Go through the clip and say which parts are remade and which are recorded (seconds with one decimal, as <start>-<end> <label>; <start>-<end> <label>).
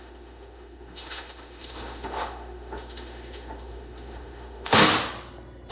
0.0-4.8 remade; 4.8-5.7 recorded